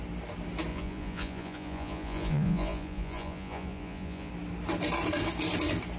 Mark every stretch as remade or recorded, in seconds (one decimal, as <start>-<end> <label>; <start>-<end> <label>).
0.0-0.7 recorded; 0.7-4.3 remade; 4.3-6.0 recorded